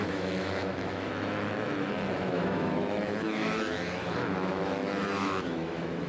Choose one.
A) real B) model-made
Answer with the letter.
B